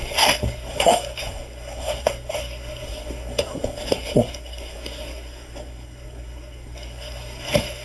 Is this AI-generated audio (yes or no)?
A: yes